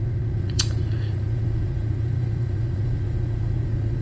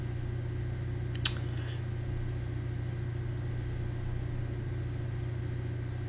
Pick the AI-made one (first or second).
first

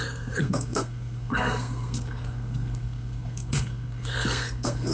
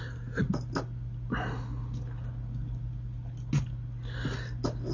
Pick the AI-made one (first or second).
first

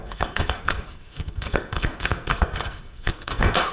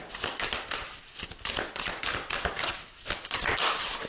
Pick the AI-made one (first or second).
first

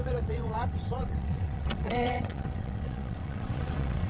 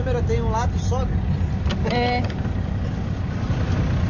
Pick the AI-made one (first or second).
first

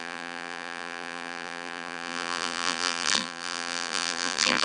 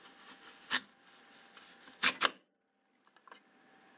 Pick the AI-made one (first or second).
first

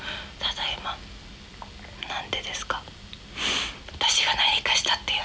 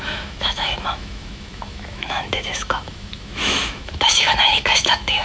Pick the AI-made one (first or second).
second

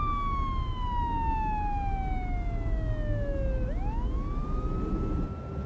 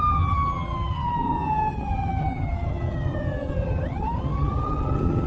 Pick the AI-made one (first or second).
second